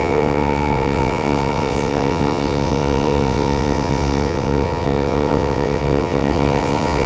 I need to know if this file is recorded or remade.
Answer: remade